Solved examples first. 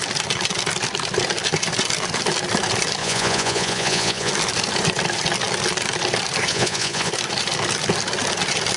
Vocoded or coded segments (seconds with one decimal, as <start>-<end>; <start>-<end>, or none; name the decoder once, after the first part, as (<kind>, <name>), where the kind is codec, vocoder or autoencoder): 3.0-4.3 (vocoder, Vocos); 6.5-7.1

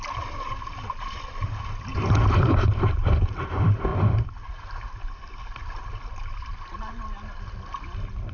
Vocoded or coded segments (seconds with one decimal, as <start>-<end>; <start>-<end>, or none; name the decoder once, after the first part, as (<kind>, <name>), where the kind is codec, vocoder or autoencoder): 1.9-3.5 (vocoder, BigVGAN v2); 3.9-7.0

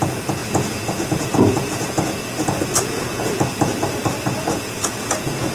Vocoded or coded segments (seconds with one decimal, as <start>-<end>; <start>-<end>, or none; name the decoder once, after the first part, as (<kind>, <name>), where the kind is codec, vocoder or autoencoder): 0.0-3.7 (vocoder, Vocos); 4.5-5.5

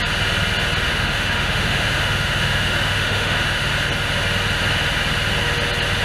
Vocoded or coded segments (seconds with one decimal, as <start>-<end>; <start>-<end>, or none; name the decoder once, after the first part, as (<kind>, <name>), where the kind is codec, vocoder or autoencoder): 0.9-3.7 (autoencoder, DAC-VAE)